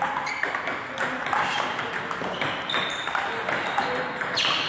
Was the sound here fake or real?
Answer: real